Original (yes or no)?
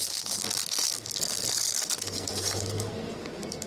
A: no